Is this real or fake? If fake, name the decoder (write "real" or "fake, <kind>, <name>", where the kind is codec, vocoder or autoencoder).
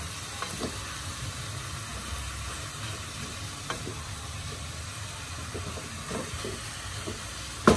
real